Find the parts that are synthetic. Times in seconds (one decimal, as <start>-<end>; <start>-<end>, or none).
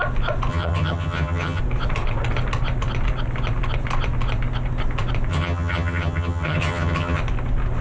0.5-1.6; 5.3-7.2